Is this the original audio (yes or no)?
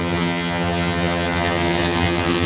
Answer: no